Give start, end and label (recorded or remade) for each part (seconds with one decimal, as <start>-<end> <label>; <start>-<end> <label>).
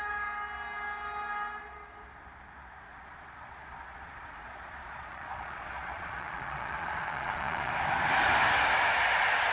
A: 0.0-2.9 recorded; 2.9-7.7 remade; 7.7-9.5 recorded